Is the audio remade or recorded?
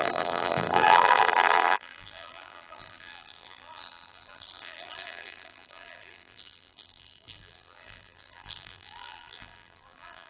remade